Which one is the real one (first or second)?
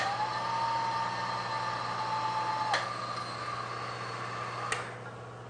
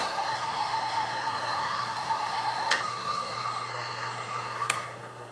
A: first